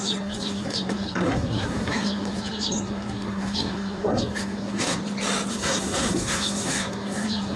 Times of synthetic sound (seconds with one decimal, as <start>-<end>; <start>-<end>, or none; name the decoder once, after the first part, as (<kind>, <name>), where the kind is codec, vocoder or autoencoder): 0.0-5.0 (codec, SNAC); 5.5-7.6